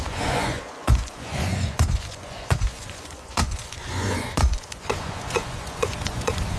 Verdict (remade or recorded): remade